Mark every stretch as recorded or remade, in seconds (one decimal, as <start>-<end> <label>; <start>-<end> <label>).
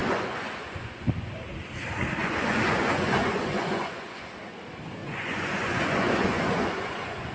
0.0-1.3 remade; 1.3-2.2 recorded; 2.2-4.3 remade; 4.3-5.0 recorded; 5.0-7.3 remade